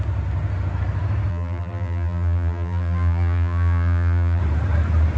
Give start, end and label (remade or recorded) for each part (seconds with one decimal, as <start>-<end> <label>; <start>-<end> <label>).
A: 0.0-1.3 recorded; 1.3-4.4 remade; 4.4-5.2 recorded